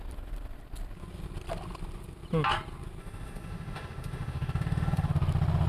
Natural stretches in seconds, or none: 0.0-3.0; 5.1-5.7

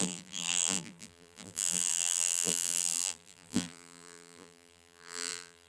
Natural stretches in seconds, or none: none